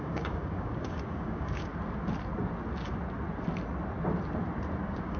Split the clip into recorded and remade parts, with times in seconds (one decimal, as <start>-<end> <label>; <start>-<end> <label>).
0.0-1.7 remade; 1.7-4.8 recorded; 4.8-5.2 remade